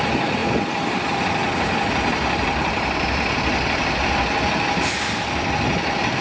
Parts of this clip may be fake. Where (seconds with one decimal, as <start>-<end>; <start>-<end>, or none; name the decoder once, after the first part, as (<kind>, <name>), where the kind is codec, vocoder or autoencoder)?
none